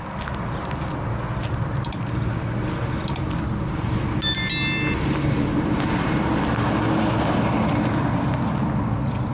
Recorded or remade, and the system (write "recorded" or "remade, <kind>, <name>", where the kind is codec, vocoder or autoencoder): recorded